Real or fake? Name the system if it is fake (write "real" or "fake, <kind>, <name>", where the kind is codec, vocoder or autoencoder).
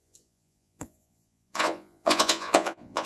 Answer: fake, vocoder, Vocos